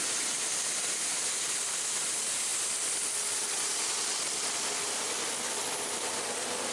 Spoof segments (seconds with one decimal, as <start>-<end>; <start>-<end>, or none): 0.0-6.7